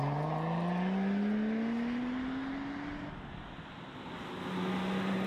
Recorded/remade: recorded